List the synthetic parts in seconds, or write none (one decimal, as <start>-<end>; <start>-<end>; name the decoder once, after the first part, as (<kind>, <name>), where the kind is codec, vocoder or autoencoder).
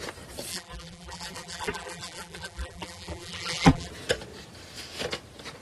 0.5-3.9 (vocoder, BigVGAN v2)